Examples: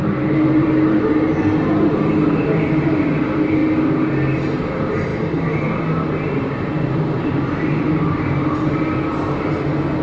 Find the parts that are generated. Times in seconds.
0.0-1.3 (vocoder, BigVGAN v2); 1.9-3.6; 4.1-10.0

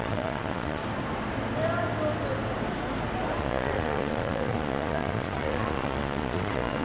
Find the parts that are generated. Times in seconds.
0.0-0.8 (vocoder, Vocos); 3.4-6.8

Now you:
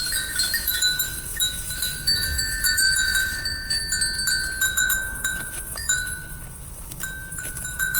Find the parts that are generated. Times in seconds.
0.0-3.8 (autoencoder, DAC-VAE); 4.6-8.0

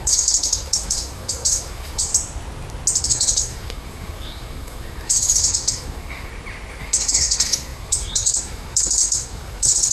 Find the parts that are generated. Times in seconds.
0.0-2.1 (codec, SNAC); 3.0-6.3; 6.8-9.9

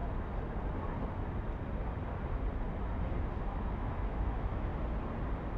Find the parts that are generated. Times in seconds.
3.4-4.7 (autoencoder, DAC-VAE)